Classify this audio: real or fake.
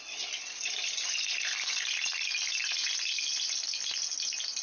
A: real